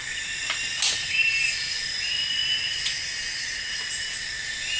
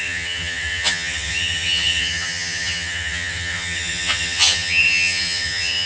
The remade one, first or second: second